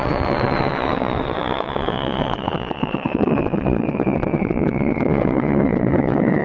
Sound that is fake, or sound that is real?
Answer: fake